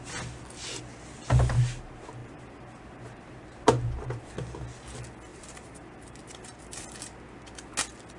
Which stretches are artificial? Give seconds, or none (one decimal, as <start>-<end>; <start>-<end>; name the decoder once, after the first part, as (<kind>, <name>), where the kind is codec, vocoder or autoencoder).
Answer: 2.2-4.3 (vocoder, BigVGAN v2); 5.3-6.8